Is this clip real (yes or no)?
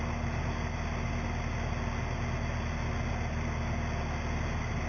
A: yes